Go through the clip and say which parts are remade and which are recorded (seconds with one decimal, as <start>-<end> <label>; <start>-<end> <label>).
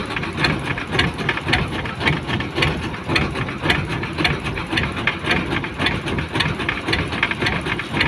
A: 0.0-3.9 recorded; 3.9-4.7 remade; 4.7-8.1 recorded